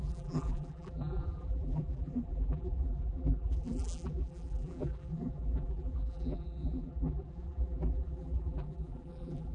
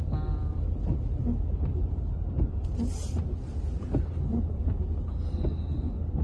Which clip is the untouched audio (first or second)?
second